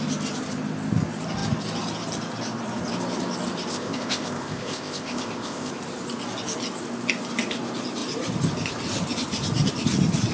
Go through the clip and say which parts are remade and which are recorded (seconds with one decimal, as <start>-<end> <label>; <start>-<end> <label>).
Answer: 0.0-3.7 recorded; 3.7-5.7 remade; 5.7-10.3 recorded